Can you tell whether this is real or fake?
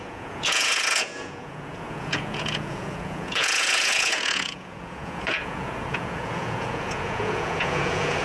fake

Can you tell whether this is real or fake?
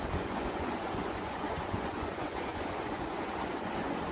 fake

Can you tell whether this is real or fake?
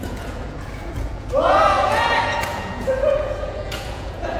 fake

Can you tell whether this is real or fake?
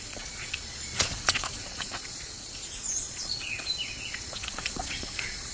fake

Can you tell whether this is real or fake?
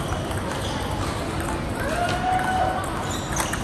real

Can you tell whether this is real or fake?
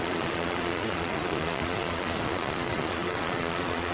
fake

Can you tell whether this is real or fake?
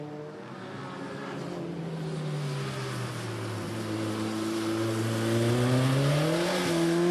real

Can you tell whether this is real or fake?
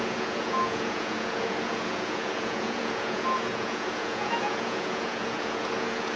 fake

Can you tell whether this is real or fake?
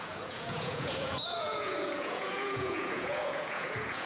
fake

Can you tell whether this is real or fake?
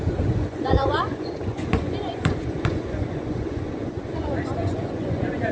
fake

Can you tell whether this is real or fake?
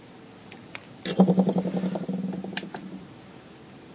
real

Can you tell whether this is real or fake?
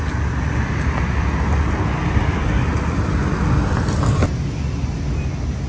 real